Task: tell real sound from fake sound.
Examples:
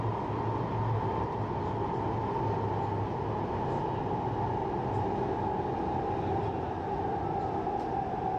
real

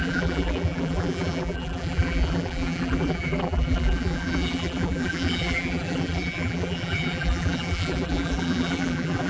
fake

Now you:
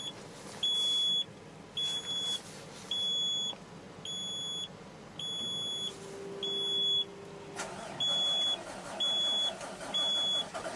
real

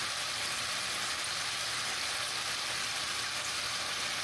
real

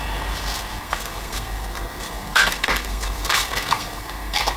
fake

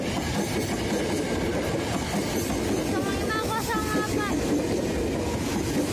real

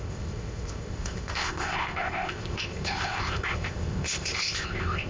fake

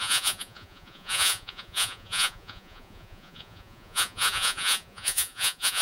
fake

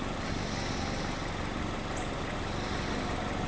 real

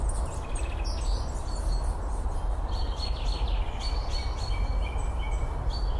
real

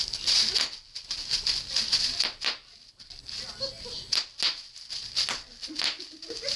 real